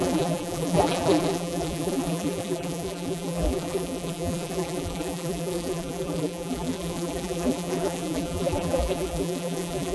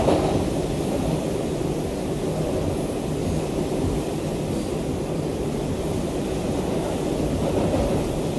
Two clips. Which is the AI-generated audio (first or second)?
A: first